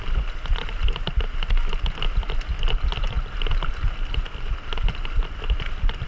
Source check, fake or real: real